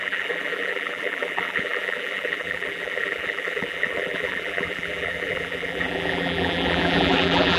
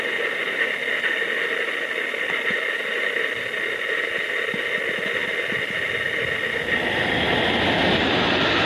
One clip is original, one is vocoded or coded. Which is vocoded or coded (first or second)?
first